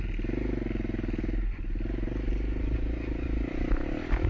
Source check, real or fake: real